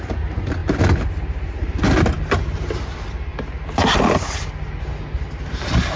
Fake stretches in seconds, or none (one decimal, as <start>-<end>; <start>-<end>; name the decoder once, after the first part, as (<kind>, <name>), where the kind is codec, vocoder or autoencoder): none